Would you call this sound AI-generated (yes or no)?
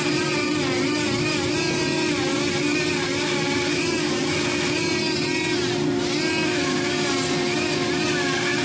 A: no